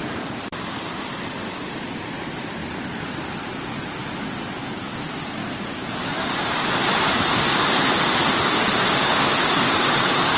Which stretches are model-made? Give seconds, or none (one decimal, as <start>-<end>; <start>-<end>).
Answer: 0.0-2.6; 5.0-10.4